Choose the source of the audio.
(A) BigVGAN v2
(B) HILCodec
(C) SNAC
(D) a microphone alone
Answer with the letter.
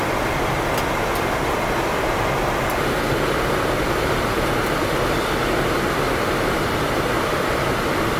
A